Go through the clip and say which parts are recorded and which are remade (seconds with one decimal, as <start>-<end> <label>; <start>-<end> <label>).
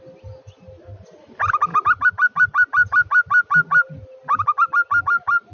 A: 0.0-5.5 recorded